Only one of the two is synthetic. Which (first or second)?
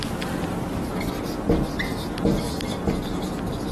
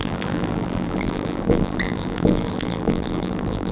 second